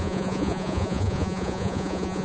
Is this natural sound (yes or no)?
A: no